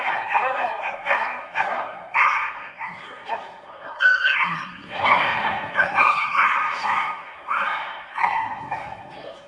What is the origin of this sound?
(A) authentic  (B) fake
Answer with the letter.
B